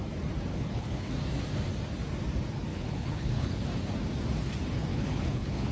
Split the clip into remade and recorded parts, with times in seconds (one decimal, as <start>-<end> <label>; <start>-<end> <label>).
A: 0.0-0.5 recorded; 0.5-1.1 remade; 1.1-2.7 recorded; 2.7-3.6 remade; 3.6-4.9 recorded; 4.9-5.7 remade